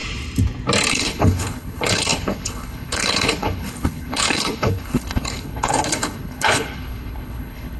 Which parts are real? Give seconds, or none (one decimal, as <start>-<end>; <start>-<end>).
0.0-0.9